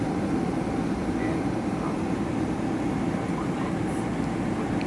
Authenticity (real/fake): real